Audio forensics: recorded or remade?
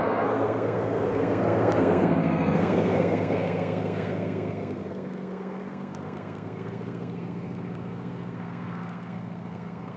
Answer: remade